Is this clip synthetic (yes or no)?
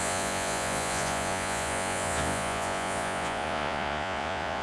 yes